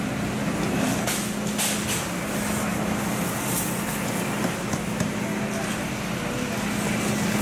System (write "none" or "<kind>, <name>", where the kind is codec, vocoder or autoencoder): none